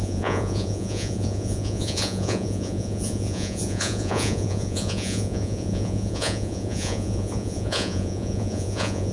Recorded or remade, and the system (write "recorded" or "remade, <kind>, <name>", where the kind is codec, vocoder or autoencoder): remade, vocoder, Vocos